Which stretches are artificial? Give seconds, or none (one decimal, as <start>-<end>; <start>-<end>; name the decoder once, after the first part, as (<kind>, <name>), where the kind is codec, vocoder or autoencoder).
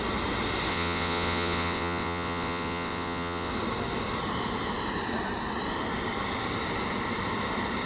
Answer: 0.7-3.5 (vocoder, WaveNeXt)